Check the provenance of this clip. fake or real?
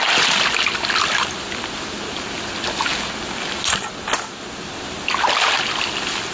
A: real